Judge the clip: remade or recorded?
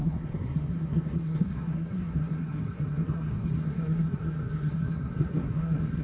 remade